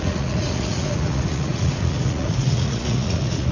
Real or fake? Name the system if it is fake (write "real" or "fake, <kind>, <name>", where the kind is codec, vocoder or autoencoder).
fake, vocoder, Vocos